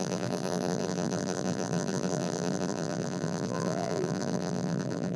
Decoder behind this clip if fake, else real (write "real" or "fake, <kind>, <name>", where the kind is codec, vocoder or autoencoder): fake, vocoder, BigVGAN v2